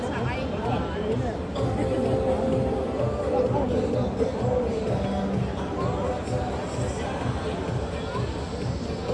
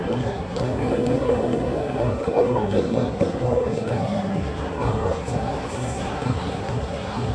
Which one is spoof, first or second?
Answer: second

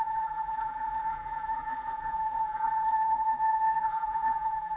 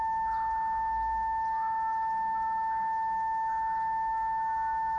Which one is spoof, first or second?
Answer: first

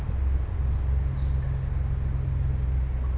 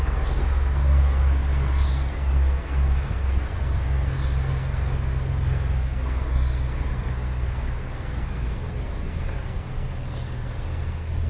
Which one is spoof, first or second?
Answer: second